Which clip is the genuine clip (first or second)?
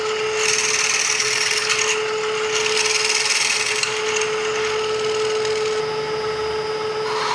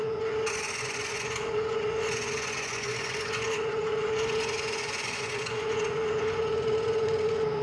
first